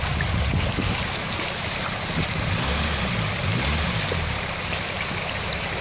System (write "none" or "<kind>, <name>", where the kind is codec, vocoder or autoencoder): none